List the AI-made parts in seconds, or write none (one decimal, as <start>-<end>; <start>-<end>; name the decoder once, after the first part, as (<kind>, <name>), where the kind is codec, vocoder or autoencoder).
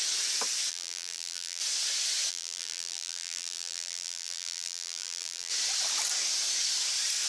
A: 0.7-1.6 (vocoder, BigVGAN v2); 2.3-5.5